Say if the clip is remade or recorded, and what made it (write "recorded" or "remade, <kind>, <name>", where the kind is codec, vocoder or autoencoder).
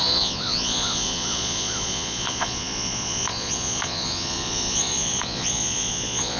remade, vocoder, Vocos